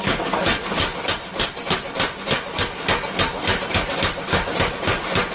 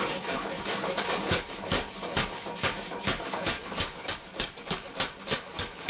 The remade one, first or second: second